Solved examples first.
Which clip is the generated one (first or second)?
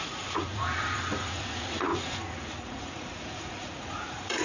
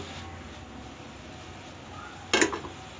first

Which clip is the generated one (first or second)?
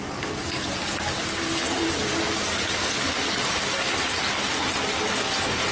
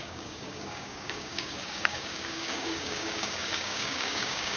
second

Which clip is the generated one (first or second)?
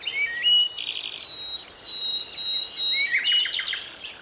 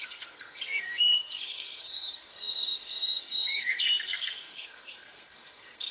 second